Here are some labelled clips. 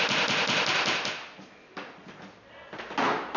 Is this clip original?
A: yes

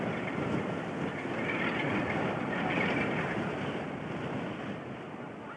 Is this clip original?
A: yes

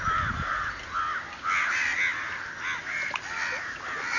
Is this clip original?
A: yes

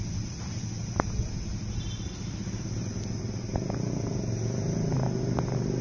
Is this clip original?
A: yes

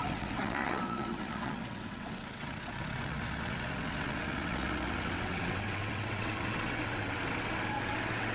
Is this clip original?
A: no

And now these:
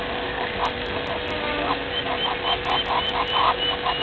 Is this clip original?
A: yes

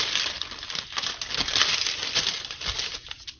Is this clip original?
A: yes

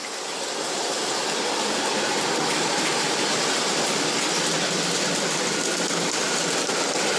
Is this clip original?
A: yes